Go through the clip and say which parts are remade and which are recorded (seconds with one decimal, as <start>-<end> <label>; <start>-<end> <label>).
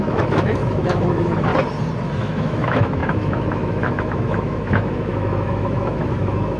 0.0-1.5 remade; 1.5-2.2 recorded; 2.2-6.6 remade